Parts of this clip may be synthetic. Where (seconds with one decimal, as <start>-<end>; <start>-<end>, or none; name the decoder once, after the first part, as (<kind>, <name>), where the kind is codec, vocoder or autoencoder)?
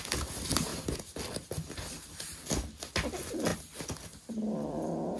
none